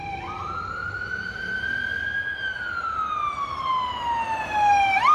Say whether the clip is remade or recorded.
recorded